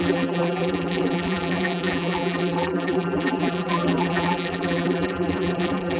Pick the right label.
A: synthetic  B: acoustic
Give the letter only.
A